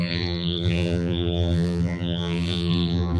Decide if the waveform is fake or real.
fake